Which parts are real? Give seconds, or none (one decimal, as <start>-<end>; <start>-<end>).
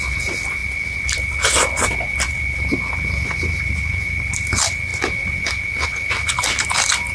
0.0-7.1